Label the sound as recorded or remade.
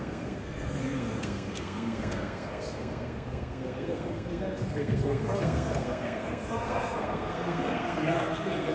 remade